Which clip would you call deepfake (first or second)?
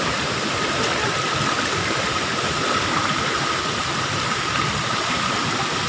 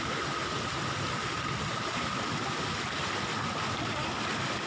first